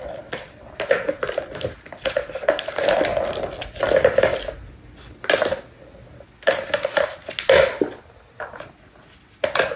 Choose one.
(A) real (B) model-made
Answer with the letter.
A